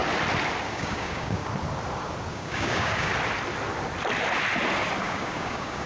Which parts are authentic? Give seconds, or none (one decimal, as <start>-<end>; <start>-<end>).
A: 0.0-0.7; 1.4-2.3; 3.1-5.0